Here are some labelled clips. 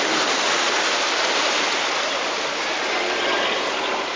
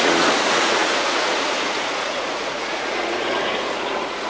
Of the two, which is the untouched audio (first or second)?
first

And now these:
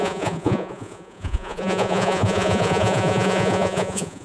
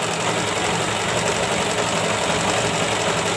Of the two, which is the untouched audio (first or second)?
second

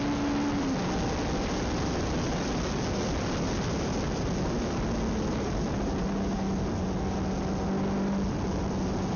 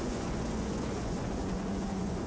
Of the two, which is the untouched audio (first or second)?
first